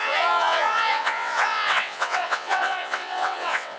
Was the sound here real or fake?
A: fake